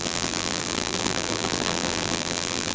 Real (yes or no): no